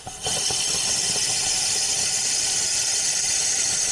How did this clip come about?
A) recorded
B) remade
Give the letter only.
A